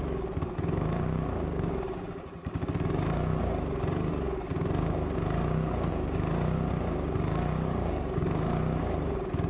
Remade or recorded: remade